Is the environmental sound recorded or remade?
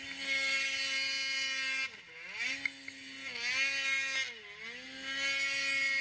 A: recorded